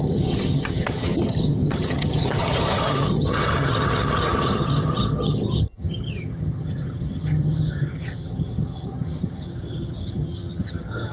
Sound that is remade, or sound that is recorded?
remade